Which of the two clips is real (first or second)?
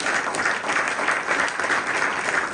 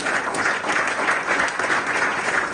first